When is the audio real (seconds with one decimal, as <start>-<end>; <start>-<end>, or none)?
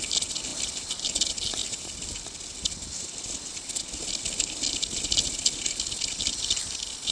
0.0-7.1